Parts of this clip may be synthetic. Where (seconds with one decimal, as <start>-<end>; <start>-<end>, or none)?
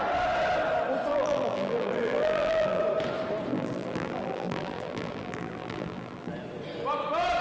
1.1-2.8; 3.5-6.3